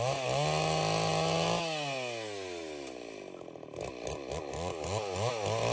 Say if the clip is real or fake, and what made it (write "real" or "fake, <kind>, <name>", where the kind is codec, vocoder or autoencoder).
real